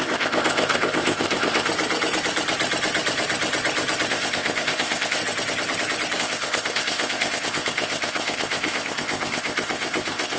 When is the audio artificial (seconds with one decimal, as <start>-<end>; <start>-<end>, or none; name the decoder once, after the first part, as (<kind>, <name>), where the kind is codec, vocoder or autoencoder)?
0.0-1.7 (codec, ZipCodec); 4.1-5.2; 6.2-10.4